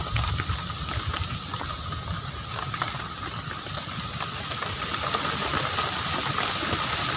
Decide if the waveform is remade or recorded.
recorded